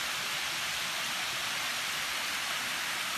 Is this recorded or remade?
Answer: recorded